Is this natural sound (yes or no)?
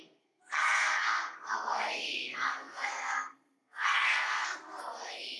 no